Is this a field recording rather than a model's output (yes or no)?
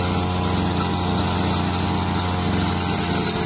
yes